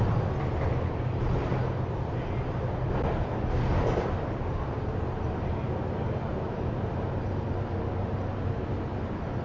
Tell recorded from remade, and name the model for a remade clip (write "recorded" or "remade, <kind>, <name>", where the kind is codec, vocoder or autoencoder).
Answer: recorded